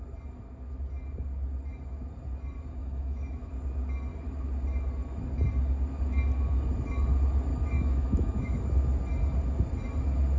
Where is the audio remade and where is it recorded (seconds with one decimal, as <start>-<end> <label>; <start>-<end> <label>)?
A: 0.0-2.8 recorded; 2.8-3.5 remade; 3.5-7.5 recorded; 7.5-8.6 remade; 8.6-10.4 recorded